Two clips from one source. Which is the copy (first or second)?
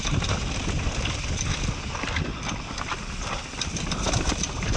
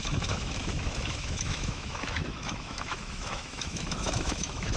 second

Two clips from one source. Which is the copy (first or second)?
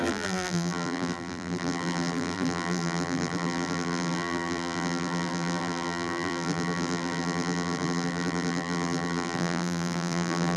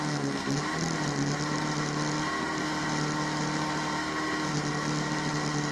first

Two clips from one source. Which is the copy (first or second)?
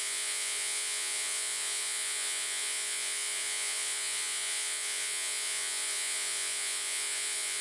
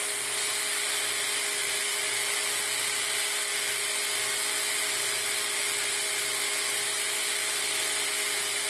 first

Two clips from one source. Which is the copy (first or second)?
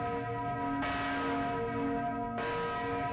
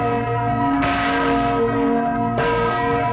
second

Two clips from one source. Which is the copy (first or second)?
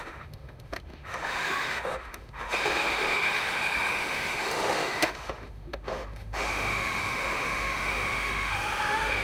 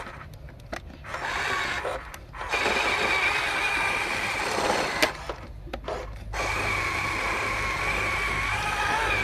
first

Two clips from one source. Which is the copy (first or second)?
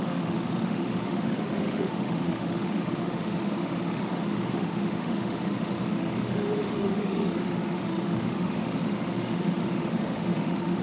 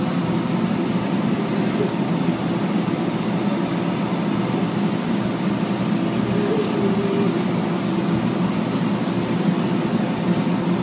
first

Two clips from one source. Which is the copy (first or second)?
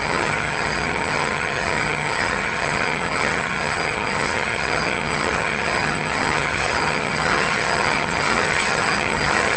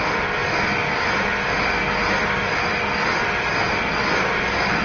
first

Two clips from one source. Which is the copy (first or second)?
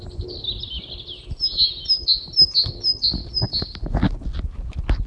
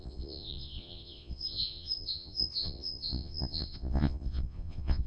second